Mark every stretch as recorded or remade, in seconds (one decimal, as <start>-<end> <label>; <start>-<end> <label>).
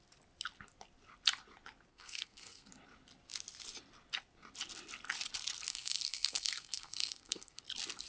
0.0-1.9 recorded; 1.9-2.7 remade; 2.7-5.7 recorded; 5.7-7.6 remade; 7.6-8.1 recorded